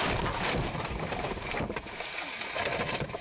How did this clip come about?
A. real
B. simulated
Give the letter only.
B